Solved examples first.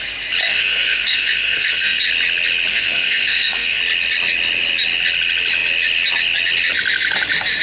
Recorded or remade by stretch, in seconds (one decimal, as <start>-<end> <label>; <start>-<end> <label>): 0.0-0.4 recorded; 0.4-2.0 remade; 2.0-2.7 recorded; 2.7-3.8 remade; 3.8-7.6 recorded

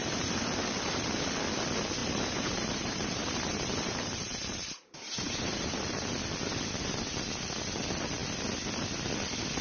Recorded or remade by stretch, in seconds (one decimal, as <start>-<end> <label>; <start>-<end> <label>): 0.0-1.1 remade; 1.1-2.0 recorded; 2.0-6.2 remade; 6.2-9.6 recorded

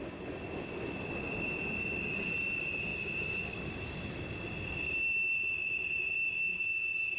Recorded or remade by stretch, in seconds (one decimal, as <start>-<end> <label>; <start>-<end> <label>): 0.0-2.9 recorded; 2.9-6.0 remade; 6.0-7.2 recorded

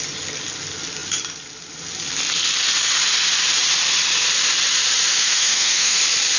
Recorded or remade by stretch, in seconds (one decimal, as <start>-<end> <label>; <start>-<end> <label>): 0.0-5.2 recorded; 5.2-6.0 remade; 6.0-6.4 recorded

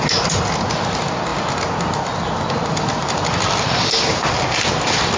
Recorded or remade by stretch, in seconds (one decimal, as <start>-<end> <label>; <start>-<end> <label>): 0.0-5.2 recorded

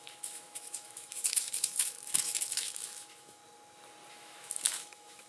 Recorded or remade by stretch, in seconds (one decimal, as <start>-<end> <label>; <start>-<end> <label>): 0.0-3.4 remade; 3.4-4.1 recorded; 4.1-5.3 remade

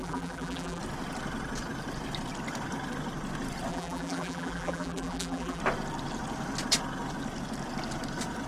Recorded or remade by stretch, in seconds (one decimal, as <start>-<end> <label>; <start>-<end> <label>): 0.0-0.8 remade; 0.8-3.7 recorded; 3.7-5.6 remade; 5.6-8.5 recorded